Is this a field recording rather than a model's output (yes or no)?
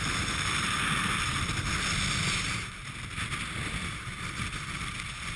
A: yes